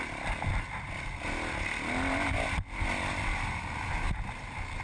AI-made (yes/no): no